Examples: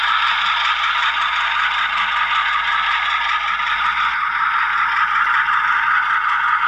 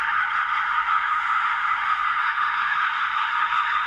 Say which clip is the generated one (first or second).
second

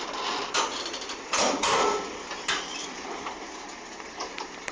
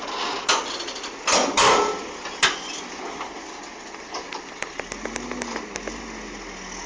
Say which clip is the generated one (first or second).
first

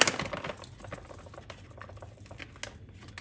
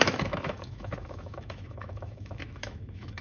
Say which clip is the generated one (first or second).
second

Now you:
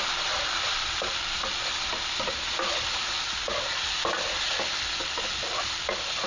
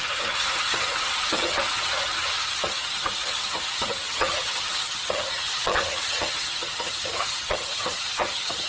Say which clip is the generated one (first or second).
second